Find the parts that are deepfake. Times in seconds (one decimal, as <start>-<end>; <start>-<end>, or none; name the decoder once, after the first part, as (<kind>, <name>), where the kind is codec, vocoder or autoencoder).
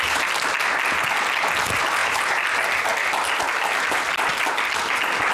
none